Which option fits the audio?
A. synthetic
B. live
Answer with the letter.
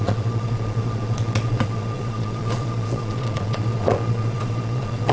A